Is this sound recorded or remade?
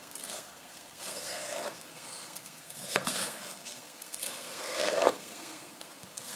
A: remade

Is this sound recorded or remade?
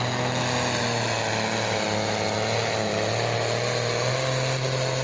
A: recorded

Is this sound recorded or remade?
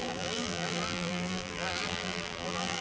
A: remade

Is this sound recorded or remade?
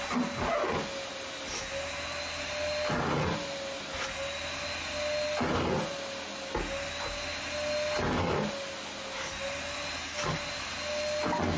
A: recorded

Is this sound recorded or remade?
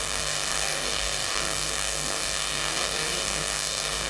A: remade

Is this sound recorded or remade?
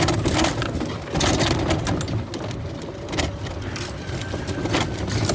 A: recorded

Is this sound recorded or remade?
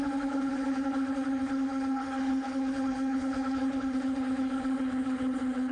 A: remade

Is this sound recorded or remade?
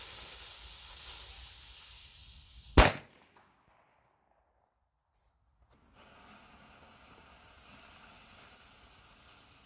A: recorded